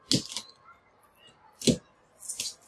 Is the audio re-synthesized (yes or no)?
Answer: no